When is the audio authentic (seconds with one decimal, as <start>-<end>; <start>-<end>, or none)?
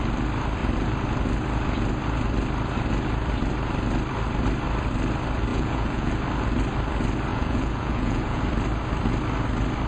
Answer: 0.0-5.5; 6.1-7.3; 8.4-9.9